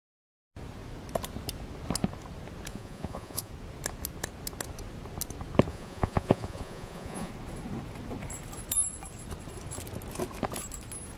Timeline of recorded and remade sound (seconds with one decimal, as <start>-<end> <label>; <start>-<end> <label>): 0.0-2.7 recorded; 2.7-3.5 remade; 3.5-5.7 recorded; 5.7-7.3 remade; 7.3-11.2 recorded